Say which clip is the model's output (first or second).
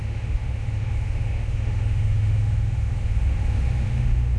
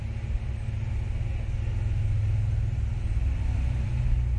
first